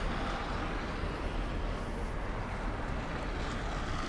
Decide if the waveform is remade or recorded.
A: recorded